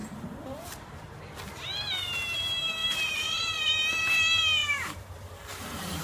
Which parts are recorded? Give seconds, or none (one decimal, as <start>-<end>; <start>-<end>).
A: 1.2-2.8; 3.6-4.6